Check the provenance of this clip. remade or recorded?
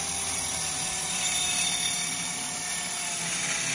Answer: recorded